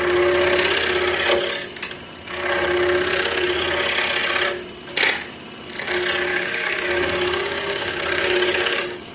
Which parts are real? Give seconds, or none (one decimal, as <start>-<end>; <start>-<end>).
0.0-6.3